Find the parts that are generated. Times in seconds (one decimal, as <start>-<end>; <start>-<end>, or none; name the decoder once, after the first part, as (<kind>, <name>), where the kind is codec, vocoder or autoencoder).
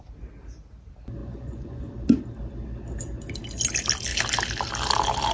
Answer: 1.2-1.9 (vocoder, Vocos)